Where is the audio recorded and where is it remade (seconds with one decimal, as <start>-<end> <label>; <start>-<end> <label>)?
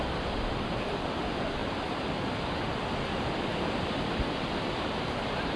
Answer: 0.0-1.6 recorded; 1.6-2.7 remade; 2.7-3.5 recorded; 3.5-4.0 remade; 4.0-5.6 recorded